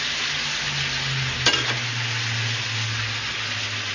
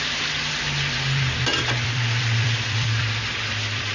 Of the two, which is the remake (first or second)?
second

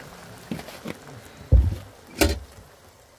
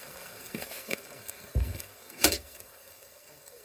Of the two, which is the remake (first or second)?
second